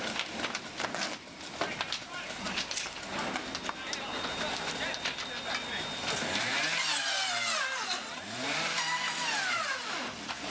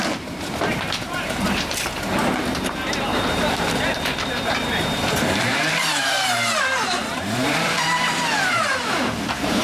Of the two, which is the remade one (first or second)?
second